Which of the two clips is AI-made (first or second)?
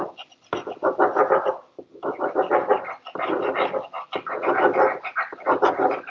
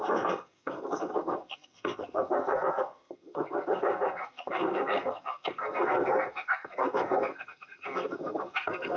second